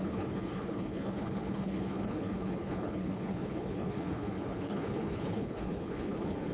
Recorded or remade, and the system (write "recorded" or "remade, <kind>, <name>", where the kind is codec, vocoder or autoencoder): remade, codec, HILCodec